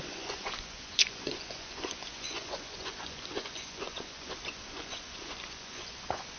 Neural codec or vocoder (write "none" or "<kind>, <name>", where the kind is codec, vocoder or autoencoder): vocoder, Vocos